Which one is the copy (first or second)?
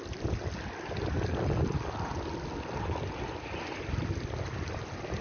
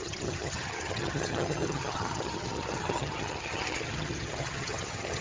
second